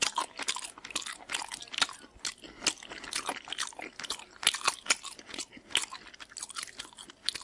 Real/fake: real